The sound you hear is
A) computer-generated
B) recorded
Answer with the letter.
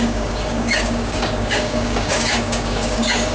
A